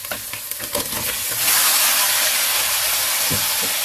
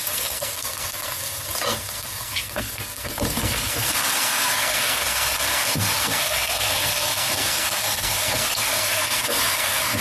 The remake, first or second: second